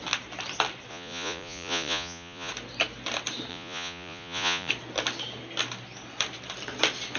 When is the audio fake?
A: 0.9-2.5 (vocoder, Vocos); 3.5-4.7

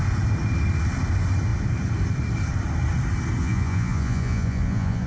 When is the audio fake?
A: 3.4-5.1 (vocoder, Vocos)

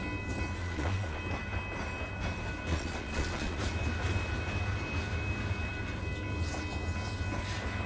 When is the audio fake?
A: 0.6-1.2 (vocoder, Vocos); 2.7-3.6

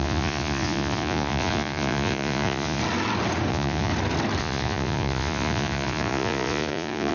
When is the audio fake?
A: 0.0-2.8 (vocoder, Vocos); 3.5-3.9; 4.4-7.1

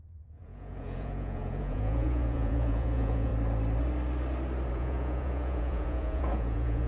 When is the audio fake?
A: 0.0-3.3 (vocoder, Vocos); 4.7-6.9